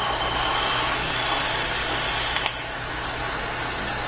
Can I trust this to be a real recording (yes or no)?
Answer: yes